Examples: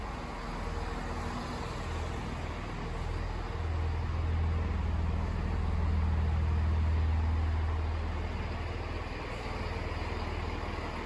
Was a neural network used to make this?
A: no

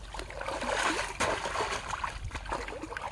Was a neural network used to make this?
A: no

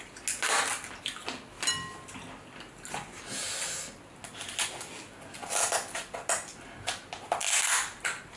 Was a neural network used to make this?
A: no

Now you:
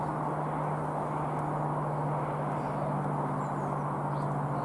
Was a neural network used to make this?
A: no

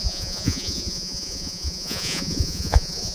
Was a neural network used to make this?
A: yes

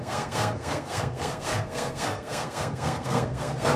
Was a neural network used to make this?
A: yes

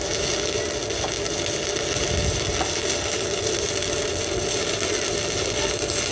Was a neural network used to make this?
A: no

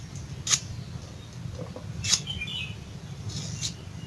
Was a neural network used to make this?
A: no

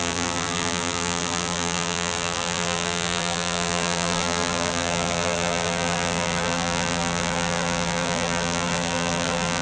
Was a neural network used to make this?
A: yes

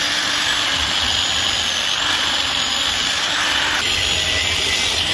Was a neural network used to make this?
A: no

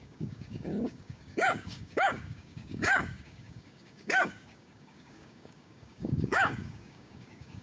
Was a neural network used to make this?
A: yes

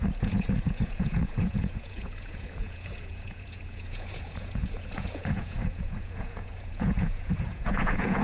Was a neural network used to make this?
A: yes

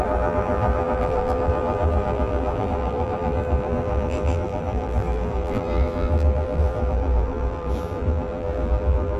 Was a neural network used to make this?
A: yes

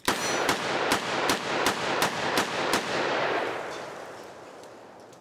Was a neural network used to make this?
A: no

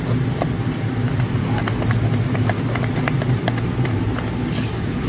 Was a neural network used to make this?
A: yes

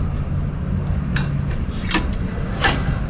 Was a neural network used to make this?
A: no